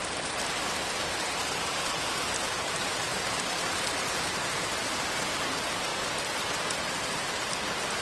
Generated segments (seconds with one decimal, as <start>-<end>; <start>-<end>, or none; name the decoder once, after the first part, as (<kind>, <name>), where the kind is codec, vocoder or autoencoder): 0.5-5.9 (vocoder, BigVGAN v2)